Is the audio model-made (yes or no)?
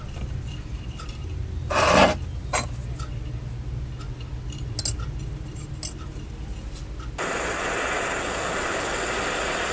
no